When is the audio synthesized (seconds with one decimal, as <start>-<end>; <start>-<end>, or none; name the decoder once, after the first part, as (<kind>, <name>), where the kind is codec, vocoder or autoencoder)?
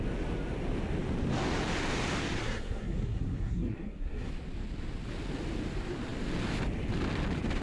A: 2.4-4.3 (codec, SNAC)